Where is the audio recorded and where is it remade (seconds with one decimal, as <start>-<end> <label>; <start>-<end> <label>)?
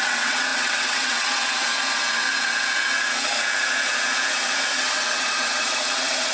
0.0-1.7 remade; 1.7-4.7 recorded; 4.7-6.3 remade